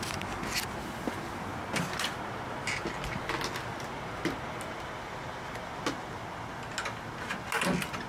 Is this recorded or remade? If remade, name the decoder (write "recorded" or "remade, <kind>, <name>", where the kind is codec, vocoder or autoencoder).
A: recorded